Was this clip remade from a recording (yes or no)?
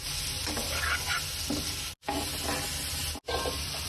no